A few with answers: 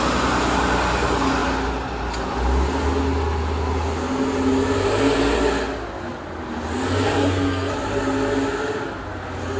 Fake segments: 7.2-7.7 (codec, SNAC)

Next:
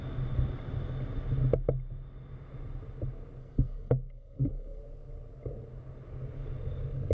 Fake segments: 3.4-4.8 (codec, SNAC)